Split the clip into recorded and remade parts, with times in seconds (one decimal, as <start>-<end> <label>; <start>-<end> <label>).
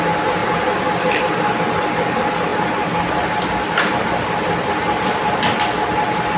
0.0-6.4 recorded